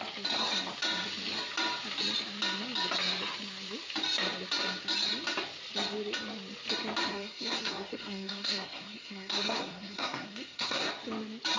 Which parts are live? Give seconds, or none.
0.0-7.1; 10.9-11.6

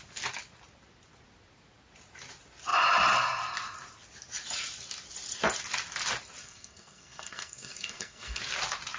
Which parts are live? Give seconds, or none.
0.0-6.4; 8.4-9.0

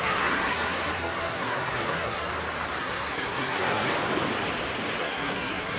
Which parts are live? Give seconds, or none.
2.3-2.8; 3.9-5.0